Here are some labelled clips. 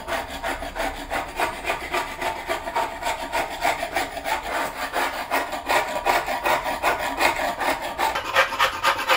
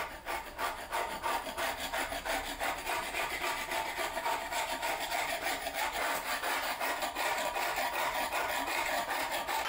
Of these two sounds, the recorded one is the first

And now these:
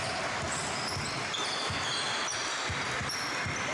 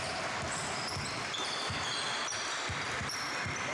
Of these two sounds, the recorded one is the first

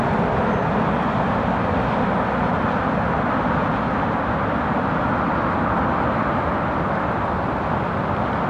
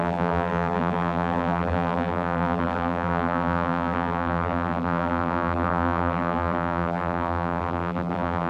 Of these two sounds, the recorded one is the first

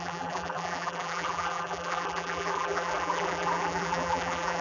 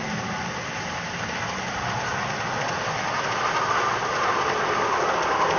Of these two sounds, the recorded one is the second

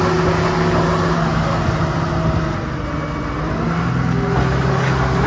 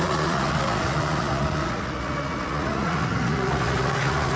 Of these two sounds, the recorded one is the first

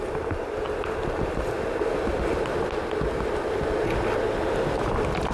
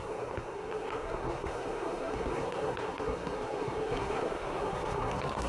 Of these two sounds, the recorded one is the first